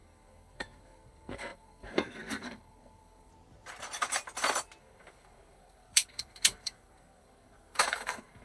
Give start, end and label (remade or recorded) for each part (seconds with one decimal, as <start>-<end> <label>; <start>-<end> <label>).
0.0-3.3 remade; 3.3-4.8 recorded; 4.8-8.4 remade